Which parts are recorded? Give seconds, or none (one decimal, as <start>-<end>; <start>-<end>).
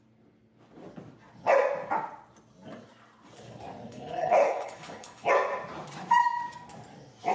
0.0-3.9; 5.3-7.3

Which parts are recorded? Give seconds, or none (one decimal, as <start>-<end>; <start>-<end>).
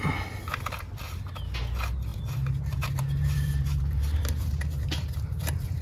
0.0-2.1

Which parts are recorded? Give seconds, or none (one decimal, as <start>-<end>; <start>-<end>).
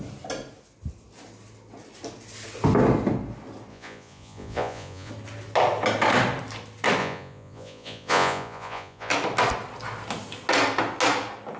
0.0-3.7; 5.1-7.0; 9.1-11.6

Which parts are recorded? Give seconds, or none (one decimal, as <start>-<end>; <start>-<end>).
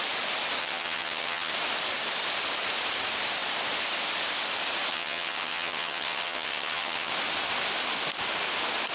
0.0-0.6; 1.5-4.9; 7.1-8.9